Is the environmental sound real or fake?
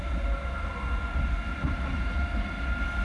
real